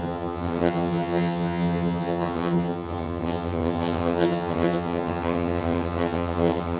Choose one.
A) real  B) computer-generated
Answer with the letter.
B